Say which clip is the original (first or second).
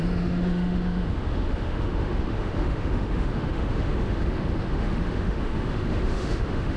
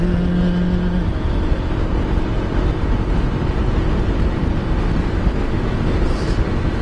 second